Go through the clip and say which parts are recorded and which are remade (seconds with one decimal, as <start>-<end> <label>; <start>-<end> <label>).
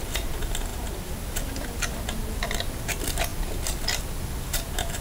0.0-5.0 recorded